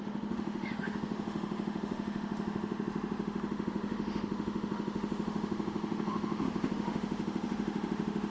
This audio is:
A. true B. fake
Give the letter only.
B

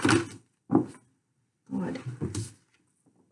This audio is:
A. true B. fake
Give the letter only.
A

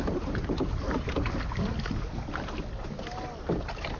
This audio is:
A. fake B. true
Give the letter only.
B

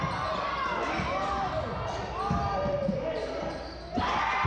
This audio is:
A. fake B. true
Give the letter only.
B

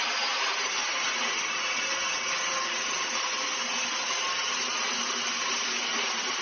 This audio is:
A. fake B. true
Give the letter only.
B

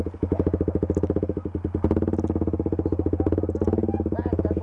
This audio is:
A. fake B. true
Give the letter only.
B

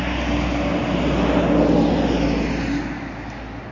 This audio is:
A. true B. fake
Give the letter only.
A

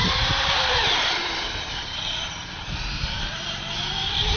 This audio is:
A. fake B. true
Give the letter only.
A